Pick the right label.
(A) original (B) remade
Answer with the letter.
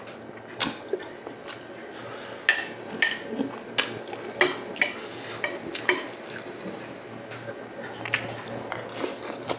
A